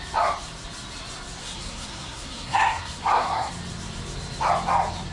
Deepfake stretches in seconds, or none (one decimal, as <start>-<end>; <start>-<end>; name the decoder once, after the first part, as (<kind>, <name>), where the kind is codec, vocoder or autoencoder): 1.4-3.5 (codec, SNAC)